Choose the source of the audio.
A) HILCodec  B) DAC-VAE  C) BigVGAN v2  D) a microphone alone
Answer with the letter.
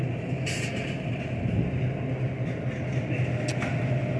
D